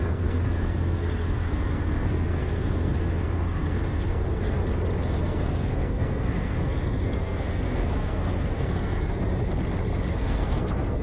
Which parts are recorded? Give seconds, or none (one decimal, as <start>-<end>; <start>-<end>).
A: 4.6-5.2; 9.2-10.1